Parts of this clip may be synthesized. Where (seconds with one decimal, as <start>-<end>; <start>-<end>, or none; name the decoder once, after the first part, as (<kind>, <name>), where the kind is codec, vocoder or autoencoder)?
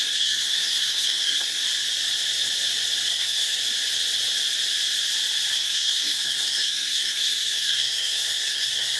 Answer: 0.0-1.6 (codec, SNAC); 3.1-3.6; 5.5-9.0